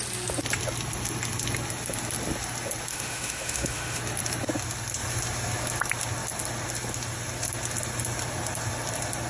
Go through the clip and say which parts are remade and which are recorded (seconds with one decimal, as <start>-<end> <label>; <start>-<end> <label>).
0.0-2.9 recorded; 2.9-4.0 remade; 4.0-9.3 recorded